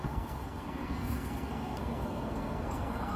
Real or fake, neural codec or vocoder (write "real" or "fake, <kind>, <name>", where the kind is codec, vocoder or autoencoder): fake, codec, SNAC